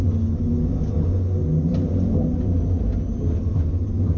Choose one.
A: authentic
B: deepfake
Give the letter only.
A